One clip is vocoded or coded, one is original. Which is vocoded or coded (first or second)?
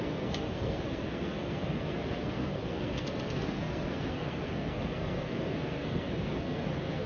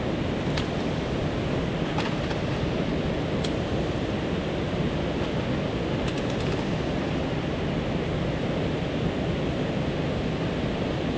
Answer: first